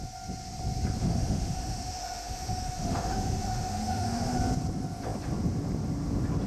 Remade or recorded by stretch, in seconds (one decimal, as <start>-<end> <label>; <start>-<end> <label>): 0.0-1.0 recorded; 1.0-4.4 remade; 4.4-6.5 recorded